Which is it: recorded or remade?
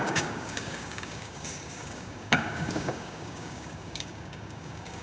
remade